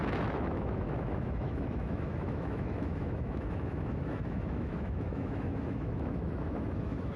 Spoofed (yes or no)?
yes